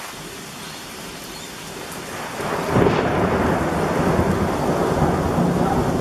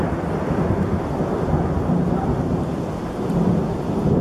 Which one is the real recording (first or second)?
first